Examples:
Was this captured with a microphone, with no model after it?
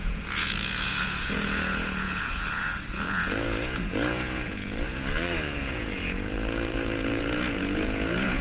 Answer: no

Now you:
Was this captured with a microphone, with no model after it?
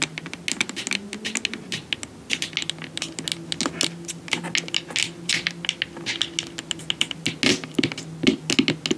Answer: yes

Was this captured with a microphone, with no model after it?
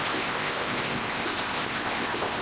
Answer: no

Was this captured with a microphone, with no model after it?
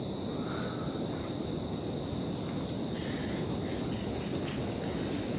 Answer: yes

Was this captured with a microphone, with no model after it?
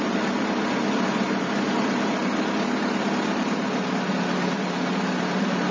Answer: yes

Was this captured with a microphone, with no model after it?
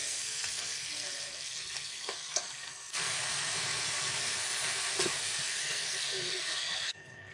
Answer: no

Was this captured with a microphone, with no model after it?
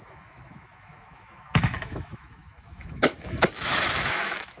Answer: no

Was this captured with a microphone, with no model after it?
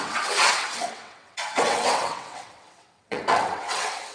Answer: no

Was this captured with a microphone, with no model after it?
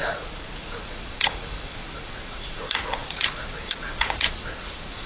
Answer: no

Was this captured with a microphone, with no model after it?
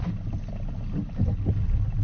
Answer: yes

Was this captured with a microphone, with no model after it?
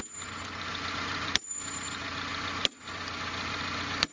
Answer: yes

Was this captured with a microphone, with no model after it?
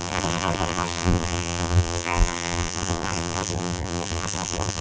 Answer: no